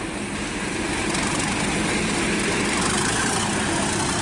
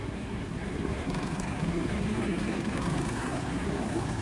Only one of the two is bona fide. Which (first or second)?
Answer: first